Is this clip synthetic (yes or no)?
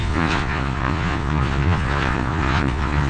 yes